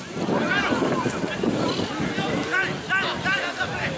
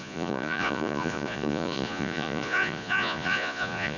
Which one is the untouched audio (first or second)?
first